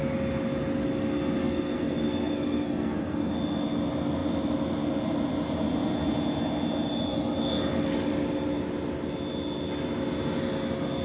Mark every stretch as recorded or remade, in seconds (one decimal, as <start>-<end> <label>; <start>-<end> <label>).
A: 0.0-1.4 recorded; 1.4-3.3 remade; 3.3-11.0 recorded